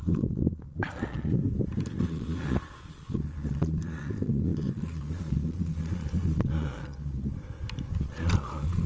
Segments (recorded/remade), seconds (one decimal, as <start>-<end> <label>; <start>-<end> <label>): 0.0-1.4 remade; 1.4-2.0 recorded; 2.0-7.3 remade; 7.3-8.0 recorded; 8.0-8.9 remade